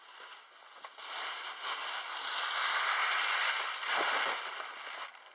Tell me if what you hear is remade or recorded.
recorded